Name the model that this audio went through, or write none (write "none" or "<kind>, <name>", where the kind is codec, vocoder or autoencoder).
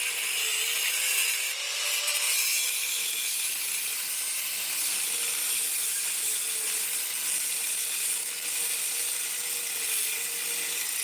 none